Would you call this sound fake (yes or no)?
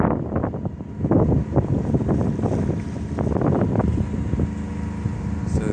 no